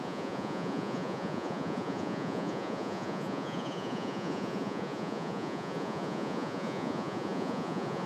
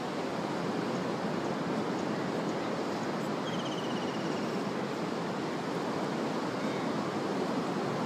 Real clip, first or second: second